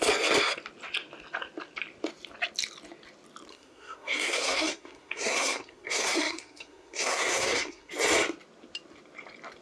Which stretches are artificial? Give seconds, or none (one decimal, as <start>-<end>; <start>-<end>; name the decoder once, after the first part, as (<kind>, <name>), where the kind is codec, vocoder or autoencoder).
3.5-7.9 (codec, SNAC)

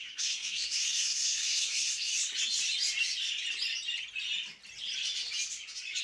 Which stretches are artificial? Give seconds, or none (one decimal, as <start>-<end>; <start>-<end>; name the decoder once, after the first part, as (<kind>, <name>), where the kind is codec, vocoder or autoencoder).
0.0-2.1 (codec, SNAC)

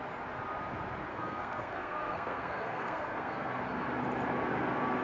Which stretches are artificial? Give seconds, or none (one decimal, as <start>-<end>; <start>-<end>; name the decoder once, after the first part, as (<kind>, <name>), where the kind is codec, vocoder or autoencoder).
1.1-3.6 (codec, SNAC)

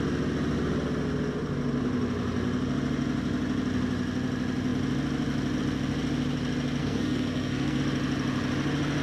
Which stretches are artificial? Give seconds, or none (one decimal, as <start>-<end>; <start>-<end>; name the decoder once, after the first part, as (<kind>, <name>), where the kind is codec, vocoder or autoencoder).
6.8-7.8 (codec, SNAC)

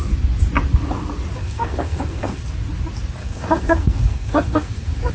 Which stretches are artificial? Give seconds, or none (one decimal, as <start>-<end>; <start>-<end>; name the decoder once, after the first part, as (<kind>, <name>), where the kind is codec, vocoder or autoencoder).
1.4-2.4 (codec, SNAC); 3.2-5.1